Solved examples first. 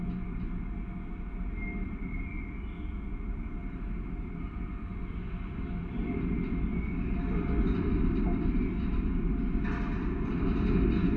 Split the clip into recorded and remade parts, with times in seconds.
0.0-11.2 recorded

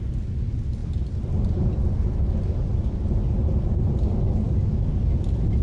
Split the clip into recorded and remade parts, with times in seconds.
0.0-5.6 recorded

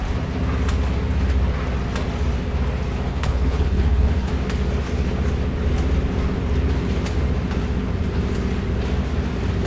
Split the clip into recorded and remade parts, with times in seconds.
0.0-3.1 recorded; 3.1-4.3 remade; 4.3-9.7 recorded

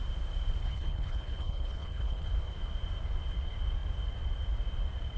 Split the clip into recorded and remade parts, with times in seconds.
0.0-0.6 recorded; 0.6-2.3 remade; 2.3-5.2 recorded

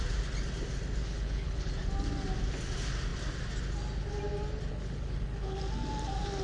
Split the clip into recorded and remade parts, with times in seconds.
0.0-1.0 recorded; 1.0-1.7 remade; 1.7-4.7 recorded; 4.7-5.6 remade; 5.6-6.4 recorded